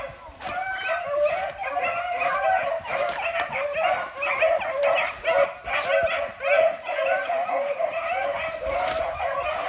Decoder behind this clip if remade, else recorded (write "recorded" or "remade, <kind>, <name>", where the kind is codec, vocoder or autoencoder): recorded